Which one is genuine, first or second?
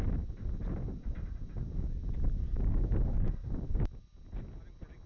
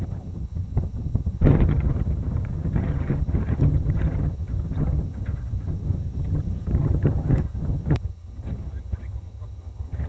first